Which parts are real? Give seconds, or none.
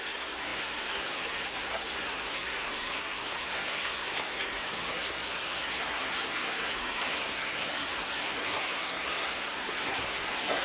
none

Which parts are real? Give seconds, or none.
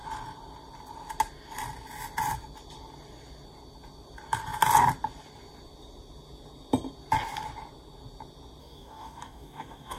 0.0-8.6